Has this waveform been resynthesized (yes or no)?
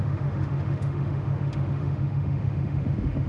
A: yes